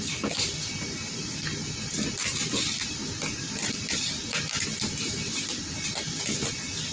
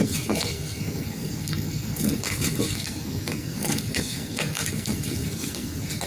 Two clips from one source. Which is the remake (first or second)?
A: second